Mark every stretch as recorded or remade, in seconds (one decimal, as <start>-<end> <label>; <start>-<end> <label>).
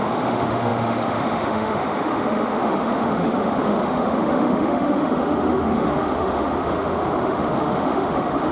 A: 0.0-8.5 remade